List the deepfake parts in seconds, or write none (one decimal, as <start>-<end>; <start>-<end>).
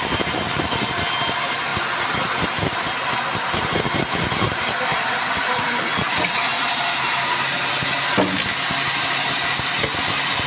none